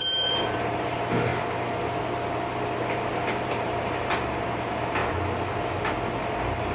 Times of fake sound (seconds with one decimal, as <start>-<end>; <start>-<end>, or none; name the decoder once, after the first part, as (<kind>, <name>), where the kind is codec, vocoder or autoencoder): 0.0-1.3 (vocoder, BigVGAN v2); 3.5-5.0; 6.2-6.7

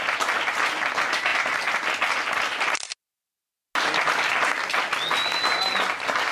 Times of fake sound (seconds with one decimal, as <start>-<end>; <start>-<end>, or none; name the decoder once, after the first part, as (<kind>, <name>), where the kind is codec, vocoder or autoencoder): none

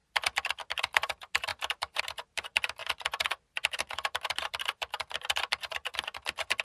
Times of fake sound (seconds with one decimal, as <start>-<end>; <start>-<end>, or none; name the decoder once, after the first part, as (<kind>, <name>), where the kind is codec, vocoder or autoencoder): 0.7-6.6 (vocoder, BigVGAN v2)

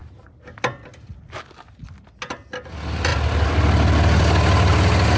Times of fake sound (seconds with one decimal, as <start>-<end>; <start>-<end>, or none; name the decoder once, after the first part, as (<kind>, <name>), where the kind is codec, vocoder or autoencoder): none

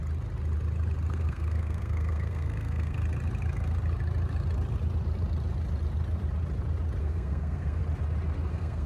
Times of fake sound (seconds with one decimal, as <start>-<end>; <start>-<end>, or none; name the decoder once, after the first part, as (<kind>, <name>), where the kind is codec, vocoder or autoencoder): 1.1-3.0 (codec, SNAC); 7.0-7.8; 8.5-8.9

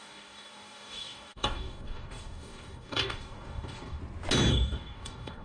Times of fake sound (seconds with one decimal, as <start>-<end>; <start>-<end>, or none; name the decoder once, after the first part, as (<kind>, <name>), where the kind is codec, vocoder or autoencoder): 0.0-4.0 (codec, DAC); 4.5-5.4